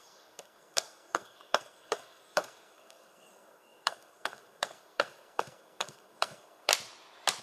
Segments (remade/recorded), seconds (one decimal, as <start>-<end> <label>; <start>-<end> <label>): 0.0-6.7 remade; 6.7-7.4 recorded